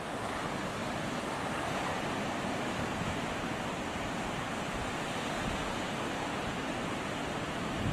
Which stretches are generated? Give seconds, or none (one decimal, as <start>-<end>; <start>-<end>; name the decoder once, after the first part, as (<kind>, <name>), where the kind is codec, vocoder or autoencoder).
0.8-2.9 (vocoder, BigVGAN v2)